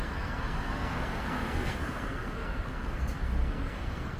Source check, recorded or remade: remade